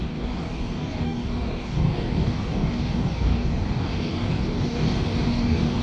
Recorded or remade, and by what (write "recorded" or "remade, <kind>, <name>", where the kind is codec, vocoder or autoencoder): remade, codec, DAC